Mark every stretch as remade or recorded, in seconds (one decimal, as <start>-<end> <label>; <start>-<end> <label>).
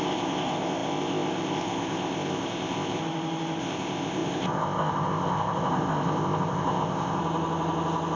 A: 0.0-3.0 remade; 3.0-3.6 recorded; 3.6-7.2 remade; 7.2-8.2 recorded